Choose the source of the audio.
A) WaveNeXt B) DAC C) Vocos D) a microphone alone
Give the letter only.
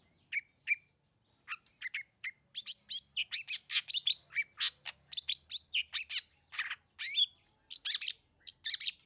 D